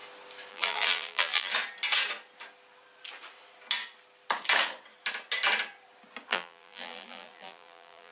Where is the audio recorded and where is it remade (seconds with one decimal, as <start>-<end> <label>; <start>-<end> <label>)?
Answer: 0.0-0.5 recorded; 0.5-1.5 remade; 1.5-6.3 recorded; 6.3-8.1 remade